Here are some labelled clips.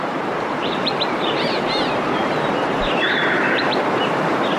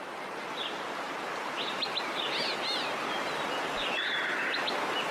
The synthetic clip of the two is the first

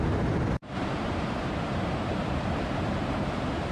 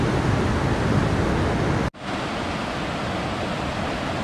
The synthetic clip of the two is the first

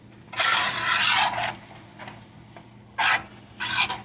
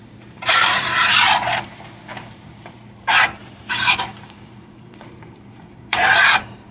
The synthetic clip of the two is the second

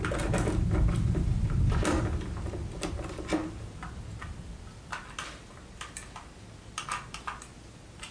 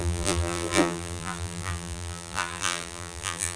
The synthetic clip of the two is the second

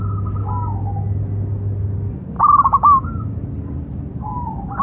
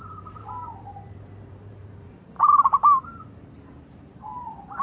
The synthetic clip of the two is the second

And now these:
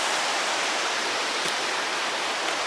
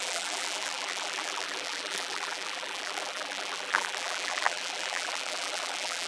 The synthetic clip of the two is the second